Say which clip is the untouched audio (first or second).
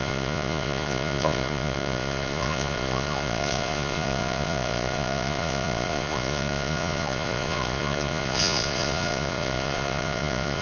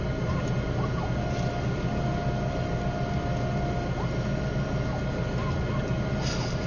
second